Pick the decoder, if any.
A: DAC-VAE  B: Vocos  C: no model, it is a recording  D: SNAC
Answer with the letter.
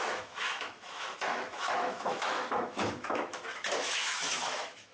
A